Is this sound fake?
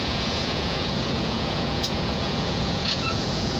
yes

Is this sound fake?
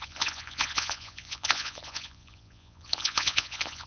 yes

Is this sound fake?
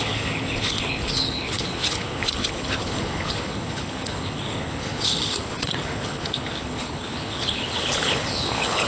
yes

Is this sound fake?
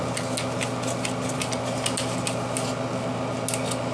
no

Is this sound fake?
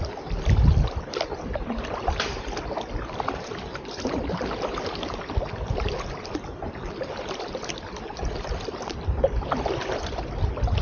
no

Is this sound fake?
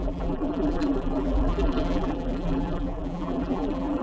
yes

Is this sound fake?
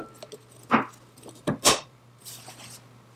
no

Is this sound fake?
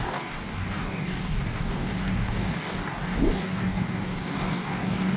yes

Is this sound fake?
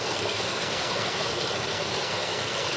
yes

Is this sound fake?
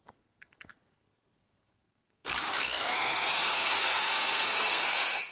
yes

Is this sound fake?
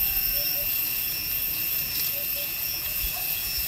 yes